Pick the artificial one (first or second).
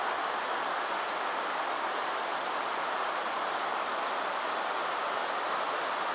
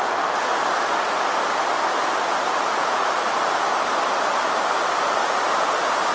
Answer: first